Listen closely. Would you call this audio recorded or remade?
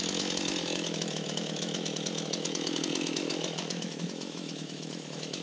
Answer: remade